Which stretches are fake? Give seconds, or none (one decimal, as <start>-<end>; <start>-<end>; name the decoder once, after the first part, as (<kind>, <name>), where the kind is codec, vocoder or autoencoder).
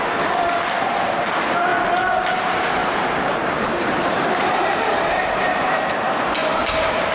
2.8-5.8 (vocoder, BigVGAN v2); 6.4-7.1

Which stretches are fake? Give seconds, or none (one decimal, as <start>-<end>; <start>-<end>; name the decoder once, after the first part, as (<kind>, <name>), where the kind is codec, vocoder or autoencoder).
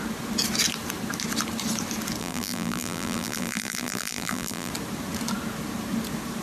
2.2-4.7 (vocoder, BigVGAN v2)